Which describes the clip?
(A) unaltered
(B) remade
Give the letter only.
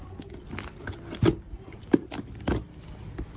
A